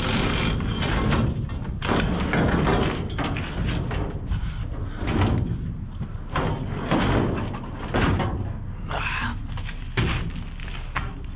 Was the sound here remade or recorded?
recorded